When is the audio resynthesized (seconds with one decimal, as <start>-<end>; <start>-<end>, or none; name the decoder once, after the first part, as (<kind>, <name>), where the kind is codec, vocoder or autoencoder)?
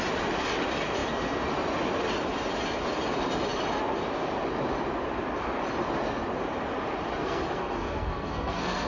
7.2-8.9 (codec, SNAC)